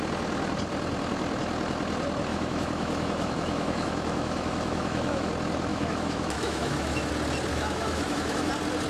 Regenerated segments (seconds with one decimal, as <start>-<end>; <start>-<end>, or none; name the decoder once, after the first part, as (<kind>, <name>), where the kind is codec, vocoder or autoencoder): 2.3-5.3 (autoencoder, DAC-VAE); 5.7-7.1; 7.5-8.5